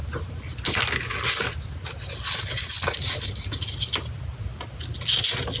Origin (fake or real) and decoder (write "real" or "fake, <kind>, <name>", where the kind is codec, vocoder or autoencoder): real